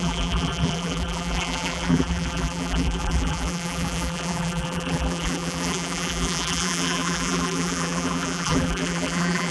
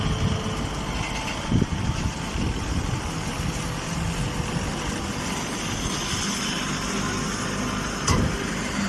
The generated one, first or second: first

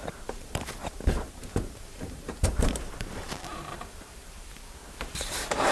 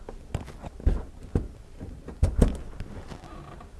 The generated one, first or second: first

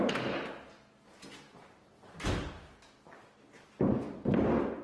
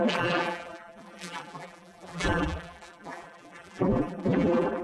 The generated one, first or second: second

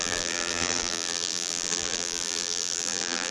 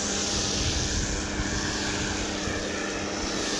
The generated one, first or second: first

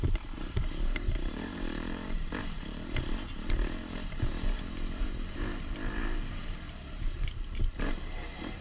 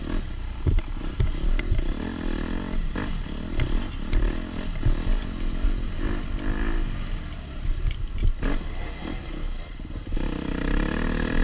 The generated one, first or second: first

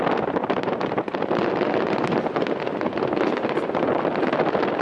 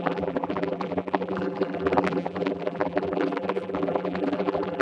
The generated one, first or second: second